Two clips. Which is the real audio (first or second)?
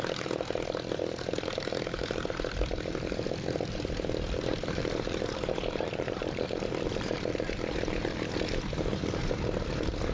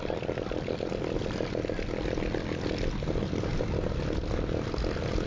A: second